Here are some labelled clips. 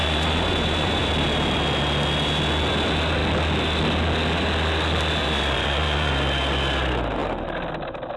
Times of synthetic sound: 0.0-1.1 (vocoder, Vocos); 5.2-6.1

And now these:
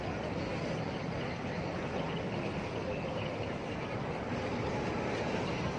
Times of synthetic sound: none

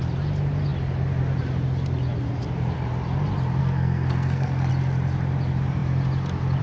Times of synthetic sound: 3.6-4.7 (codec, SNAC)

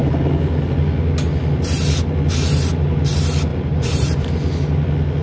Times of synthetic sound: 3.5-4.3 (vocoder, BigVGAN v2)

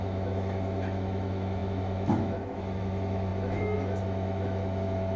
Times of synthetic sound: 0.0-5.2 (autoencoder, DAC-VAE)

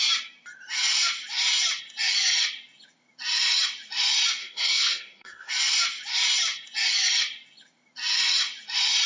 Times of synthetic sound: 4.4-5.5 (codec, SNAC)

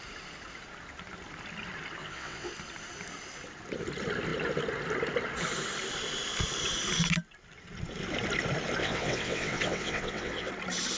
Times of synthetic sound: 2.0-2.5 (vocoder, WaveNeXt); 8.8-10.5

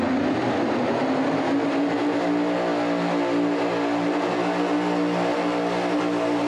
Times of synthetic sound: none